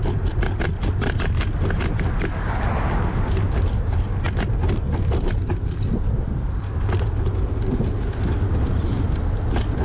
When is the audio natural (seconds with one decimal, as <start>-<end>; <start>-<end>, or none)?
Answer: 0.0-9.8